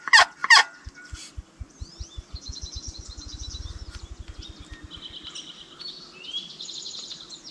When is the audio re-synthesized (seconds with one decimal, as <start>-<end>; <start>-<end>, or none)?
none